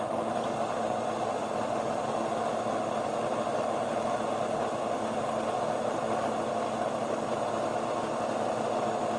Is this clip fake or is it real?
real